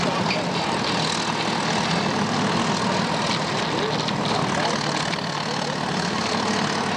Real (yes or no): yes